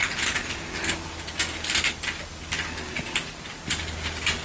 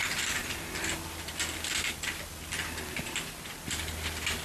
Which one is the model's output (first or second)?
second